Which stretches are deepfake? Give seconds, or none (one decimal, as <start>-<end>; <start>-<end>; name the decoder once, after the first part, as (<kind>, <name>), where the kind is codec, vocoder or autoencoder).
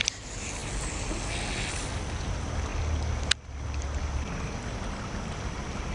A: none